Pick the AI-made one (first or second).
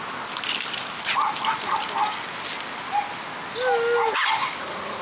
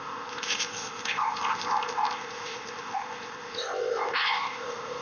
second